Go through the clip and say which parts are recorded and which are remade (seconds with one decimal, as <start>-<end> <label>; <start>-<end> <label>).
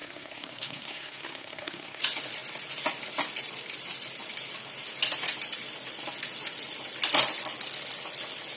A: 0.0-2.0 remade; 2.0-8.6 recorded